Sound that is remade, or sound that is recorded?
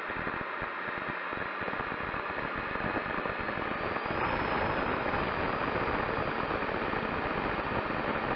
recorded